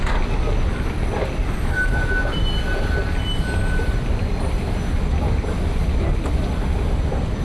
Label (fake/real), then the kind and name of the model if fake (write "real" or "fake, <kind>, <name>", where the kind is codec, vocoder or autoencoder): real